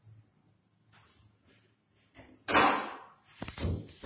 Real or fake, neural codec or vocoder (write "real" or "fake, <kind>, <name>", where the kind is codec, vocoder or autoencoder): real